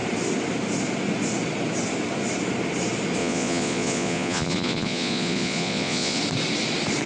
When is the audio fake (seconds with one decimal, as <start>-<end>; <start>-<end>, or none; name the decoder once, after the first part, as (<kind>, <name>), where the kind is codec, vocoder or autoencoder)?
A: 3.2-6.2 (vocoder, Vocos)